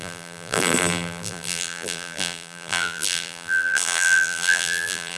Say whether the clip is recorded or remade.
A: remade